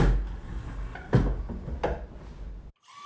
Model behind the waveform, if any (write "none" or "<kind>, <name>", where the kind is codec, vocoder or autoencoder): none